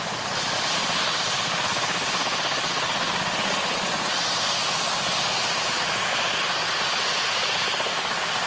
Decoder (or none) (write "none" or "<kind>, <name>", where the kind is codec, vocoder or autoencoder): none